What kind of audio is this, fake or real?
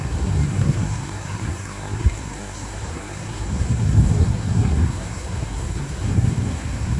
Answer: fake